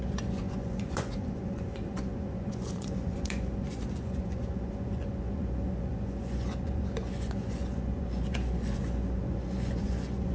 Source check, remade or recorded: remade